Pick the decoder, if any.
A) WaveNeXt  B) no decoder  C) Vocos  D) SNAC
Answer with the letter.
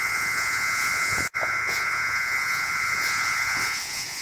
C